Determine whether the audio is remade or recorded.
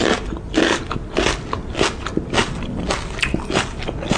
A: recorded